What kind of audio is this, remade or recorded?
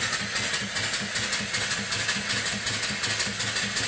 recorded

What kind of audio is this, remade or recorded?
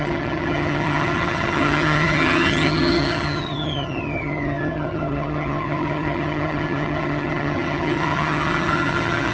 remade